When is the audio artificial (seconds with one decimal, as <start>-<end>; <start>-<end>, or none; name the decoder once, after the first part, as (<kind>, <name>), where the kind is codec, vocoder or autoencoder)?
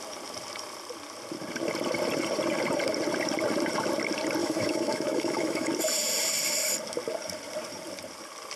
4.4-5.7 (autoencoder, DAC-VAE)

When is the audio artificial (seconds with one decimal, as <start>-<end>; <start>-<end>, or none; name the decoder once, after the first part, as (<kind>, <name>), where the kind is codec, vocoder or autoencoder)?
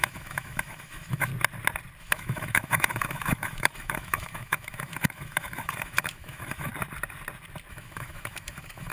0.0-1.3 (autoencoder, DAC-VAE); 2.0-6.7; 7.7-8.9